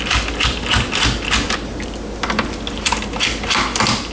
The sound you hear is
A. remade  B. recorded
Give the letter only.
B